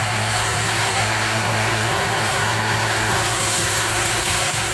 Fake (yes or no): yes